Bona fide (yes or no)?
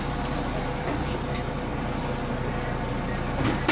yes